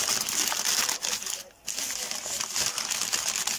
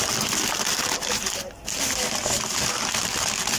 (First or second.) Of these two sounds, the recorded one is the first